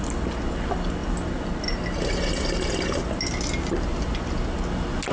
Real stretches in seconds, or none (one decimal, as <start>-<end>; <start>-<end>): 0.0-5.1